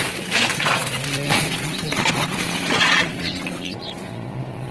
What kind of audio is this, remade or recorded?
remade